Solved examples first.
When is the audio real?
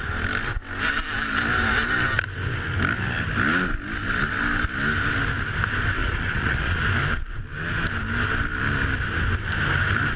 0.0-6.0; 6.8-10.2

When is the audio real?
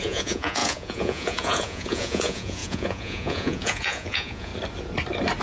4.5-5.4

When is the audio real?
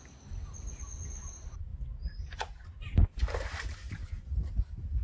0.0-5.0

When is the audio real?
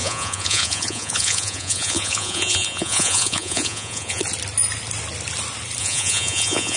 4.2-5.8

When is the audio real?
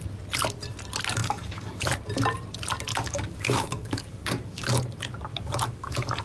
0.0-1.2; 1.9-2.9; 4.8-5.3